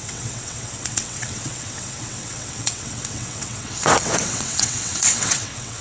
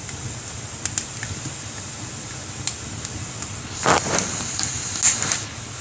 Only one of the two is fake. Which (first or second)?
first